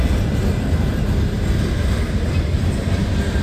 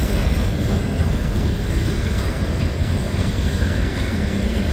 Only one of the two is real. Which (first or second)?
first